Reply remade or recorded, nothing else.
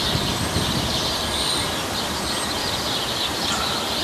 remade